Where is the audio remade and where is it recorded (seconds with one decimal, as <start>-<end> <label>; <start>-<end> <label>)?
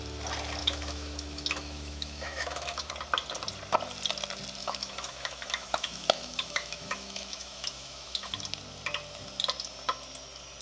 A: 0.0-0.6 recorded; 0.6-2.9 remade; 2.9-4.6 recorded; 4.6-8.4 remade; 8.4-10.6 recorded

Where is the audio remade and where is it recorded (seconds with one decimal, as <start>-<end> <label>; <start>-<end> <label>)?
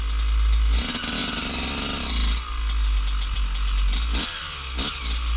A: 0.0-5.4 recorded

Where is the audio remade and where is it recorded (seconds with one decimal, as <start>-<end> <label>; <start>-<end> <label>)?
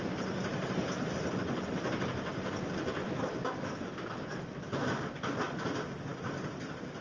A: 0.0-3.0 recorded; 3.0-5.0 remade; 5.0-7.0 recorded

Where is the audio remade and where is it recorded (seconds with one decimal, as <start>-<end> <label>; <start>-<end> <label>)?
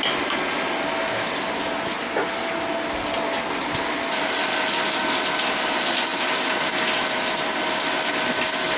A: 0.0-8.8 recorded